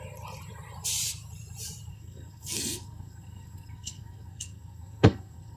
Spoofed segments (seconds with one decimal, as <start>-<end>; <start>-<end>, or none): 1.9-5.6